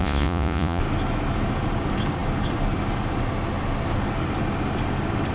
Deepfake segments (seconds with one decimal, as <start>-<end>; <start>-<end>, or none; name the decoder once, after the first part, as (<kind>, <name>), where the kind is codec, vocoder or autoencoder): 0.0-0.8 (vocoder, Vocos)